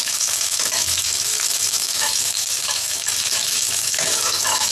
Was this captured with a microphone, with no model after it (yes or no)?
no